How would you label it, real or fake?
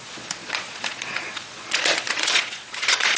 fake